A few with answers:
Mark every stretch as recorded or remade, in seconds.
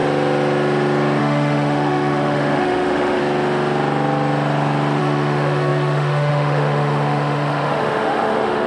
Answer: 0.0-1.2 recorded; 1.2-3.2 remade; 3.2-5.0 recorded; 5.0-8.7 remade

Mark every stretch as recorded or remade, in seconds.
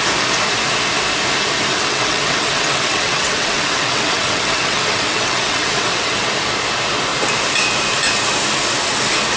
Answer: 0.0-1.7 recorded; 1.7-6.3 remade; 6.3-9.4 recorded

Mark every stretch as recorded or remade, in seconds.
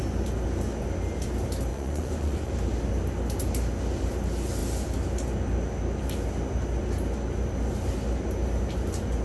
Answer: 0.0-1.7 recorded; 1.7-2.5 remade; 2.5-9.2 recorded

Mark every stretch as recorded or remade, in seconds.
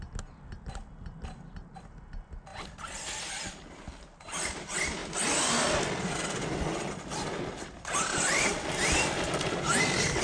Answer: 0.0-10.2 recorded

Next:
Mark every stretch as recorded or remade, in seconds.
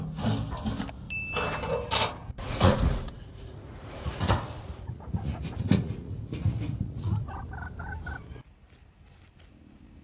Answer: 0.0-2.2 recorded; 2.2-7.3 remade; 7.3-10.0 recorded